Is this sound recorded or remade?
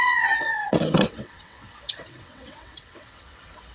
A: remade